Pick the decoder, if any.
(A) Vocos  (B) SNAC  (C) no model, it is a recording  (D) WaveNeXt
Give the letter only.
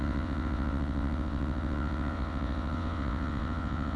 D